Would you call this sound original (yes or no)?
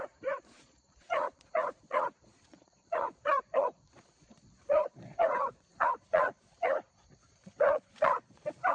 no